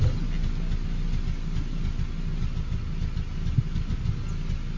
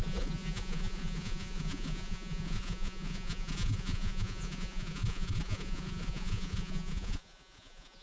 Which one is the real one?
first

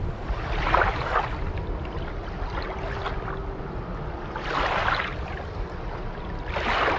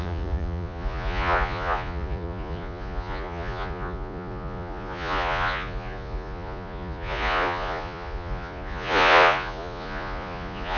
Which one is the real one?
first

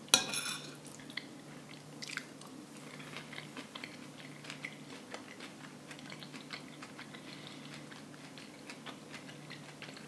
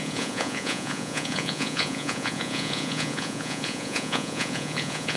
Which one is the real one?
first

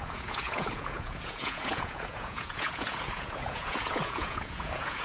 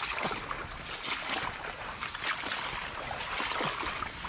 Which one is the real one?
second